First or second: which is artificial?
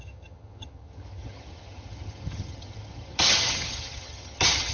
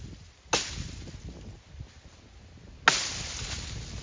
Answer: first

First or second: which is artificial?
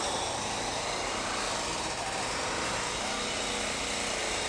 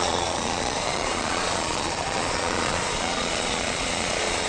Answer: second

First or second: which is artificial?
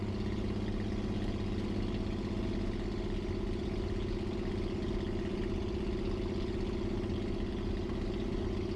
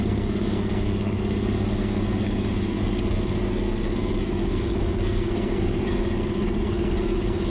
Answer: second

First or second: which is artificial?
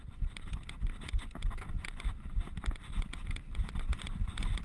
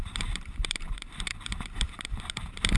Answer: second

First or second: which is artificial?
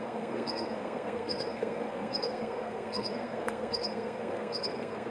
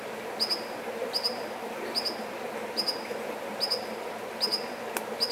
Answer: first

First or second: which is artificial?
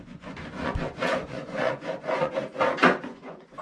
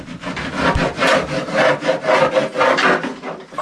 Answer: first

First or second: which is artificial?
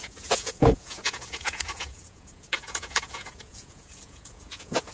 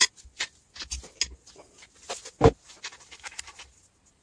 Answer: first